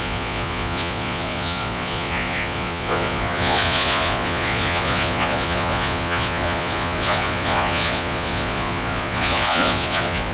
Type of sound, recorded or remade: remade